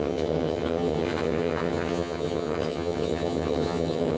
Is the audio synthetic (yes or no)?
yes